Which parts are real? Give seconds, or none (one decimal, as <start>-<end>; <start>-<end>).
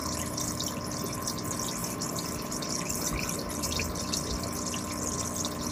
0.8-1.8; 4.0-5.7